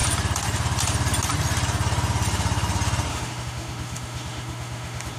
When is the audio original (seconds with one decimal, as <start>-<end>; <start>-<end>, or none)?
0.0-3.1